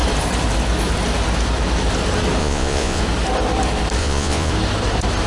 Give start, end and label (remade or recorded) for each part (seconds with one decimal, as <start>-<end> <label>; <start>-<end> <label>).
0.0-2.4 recorded; 2.4-3.0 remade; 3.0-4.0 recorded; 4.0-4.5 remade; 4.5-5.3 recorded